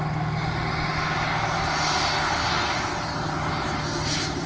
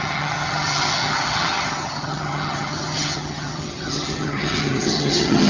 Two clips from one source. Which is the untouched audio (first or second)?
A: first